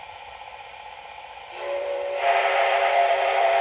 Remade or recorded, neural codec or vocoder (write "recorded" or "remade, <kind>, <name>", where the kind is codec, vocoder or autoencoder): remade, vocoder, BigVGAN v2